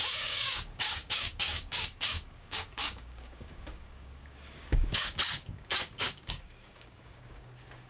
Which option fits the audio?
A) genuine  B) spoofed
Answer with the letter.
B